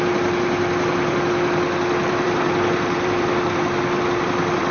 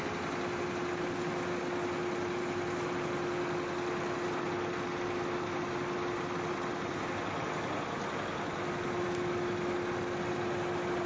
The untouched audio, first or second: second